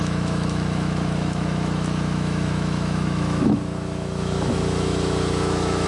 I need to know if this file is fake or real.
fake